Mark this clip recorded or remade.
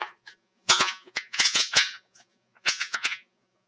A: remade